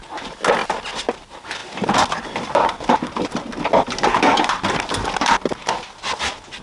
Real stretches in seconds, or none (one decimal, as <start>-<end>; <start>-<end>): 0.0-6.6